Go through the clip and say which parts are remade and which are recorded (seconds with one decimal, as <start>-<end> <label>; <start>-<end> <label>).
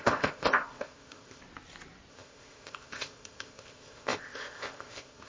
0.0-1.4 remade; 1.4-2.1 recorded; 2.1-5.3 remade